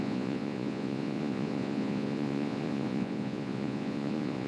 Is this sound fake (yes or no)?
yes